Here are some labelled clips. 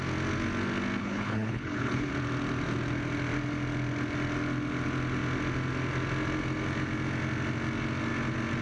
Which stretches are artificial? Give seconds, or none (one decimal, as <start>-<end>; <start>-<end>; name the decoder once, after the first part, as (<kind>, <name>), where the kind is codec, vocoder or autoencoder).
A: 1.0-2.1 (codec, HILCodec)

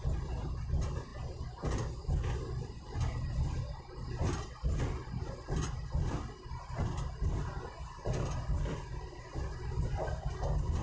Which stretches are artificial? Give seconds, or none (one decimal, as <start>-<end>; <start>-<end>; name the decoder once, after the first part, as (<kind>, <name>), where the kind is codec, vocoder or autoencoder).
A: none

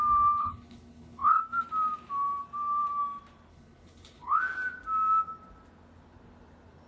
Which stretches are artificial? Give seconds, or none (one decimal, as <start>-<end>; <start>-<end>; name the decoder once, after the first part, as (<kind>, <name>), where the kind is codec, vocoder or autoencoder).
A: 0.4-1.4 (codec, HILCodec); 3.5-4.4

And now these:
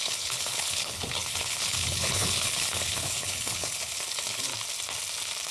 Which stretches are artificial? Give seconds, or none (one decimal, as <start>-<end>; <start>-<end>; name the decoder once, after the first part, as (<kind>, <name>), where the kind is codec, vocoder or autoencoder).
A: 0.0-4.5 (codec, HILCodec)

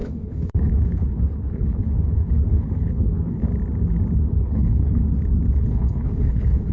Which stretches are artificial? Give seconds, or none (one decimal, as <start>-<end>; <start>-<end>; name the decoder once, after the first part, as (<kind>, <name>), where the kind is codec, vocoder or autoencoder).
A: 0.0-3.5 (codec, HILCodec); 4.4-5.0; 5.6-6.7

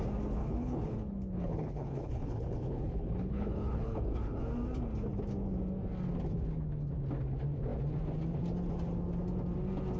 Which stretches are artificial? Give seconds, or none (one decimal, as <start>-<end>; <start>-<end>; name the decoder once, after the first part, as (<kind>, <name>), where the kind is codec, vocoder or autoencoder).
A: 0.4-4.4 (codec, HILCodec)

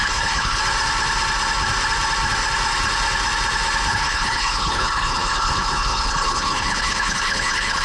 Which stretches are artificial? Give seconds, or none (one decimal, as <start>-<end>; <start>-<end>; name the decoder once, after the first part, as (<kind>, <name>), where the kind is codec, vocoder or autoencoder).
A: 0.0-0.6 (codec, HILCodec); 3.9-7.8

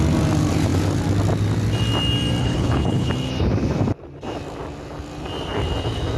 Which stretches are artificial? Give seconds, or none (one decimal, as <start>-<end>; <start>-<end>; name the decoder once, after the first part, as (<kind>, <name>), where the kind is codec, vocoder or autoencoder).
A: 2.4-3.1 (codec, HILCodec)